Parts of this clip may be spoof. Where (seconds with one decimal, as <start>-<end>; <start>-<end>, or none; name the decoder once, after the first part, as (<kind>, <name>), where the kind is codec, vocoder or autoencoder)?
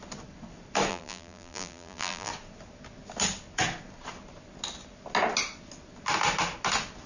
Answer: 0.9-2.3 (vocoder, BigVGAN v2)